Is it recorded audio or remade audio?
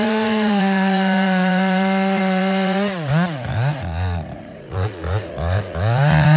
remade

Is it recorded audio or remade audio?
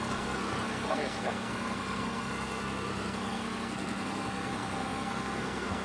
remade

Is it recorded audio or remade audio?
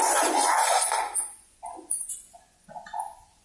remade